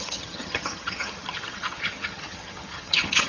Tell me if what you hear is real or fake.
fake